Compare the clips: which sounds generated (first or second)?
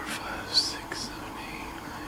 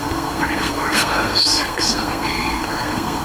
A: second